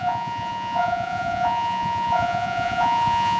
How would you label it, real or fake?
fake